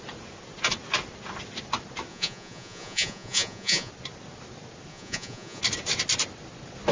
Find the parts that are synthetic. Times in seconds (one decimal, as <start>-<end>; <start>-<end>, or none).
2.1-3.9; 4.9-5.6